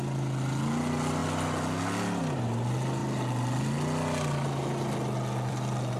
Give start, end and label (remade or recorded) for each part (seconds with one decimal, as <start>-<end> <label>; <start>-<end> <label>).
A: 0.0-6.0 recorded